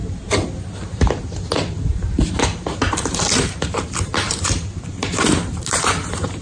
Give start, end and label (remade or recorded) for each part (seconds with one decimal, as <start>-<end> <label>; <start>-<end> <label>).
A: 0.0-0.8 recorded; 0.8-6.4 remade

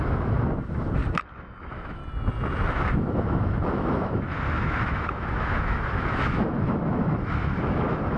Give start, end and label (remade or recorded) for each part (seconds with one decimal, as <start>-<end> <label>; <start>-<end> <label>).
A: 0.0-1.0 remade; 1.0-1.6 recorded; 1.6-2.0 remade; 2.0-2.7 recorded; 2.7-8.2 remade

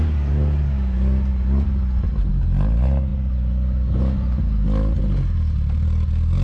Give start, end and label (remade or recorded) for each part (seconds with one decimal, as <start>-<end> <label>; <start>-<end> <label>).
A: 0.0-6.4 recorded

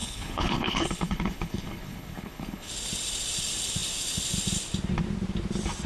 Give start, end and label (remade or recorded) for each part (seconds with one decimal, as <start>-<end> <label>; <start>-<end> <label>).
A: 0.0-2.7 remade; 2.7-5.9 recorded

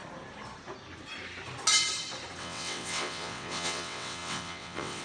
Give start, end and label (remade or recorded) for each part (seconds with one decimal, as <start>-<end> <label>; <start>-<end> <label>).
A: 0.0-2.4 recorded; 2.4-5.0 remade

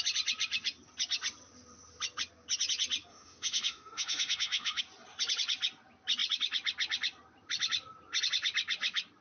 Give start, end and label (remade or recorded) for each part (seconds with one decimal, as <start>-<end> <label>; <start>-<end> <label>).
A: 0.0-3.1 recorded; 3.1-4.8 remade; 4.8-9.2 recorded

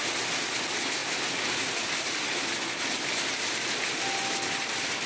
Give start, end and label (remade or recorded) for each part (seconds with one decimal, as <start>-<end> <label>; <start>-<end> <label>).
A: 0.0-5.1 recorded